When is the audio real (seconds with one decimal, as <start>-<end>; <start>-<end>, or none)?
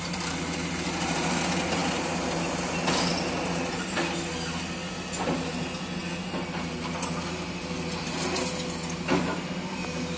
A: 0.0-10.2